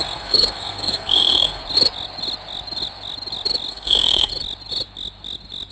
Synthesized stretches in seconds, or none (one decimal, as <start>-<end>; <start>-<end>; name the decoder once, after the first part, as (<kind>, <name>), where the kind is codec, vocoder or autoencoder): 0.0-1.6 (codec, SNAC); 3.7-4.3